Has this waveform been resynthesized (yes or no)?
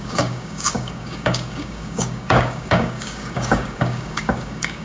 yes